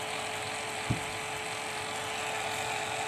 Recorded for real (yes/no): yes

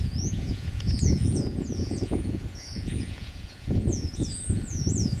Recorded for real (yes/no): no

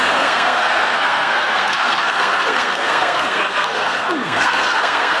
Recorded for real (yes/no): no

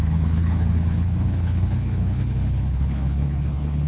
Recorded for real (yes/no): no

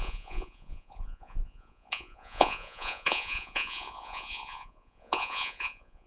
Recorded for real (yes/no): no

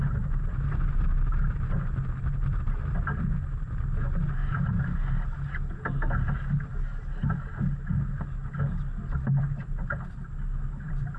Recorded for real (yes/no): yes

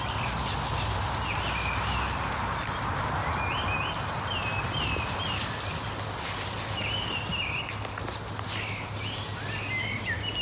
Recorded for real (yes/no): yes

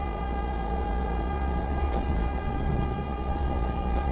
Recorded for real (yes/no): no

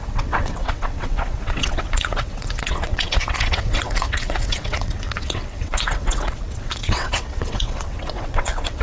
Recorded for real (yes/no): no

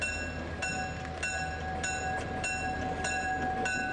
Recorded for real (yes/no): yes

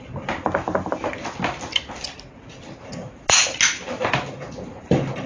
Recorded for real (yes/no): yes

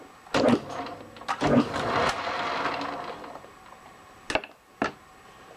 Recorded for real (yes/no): yes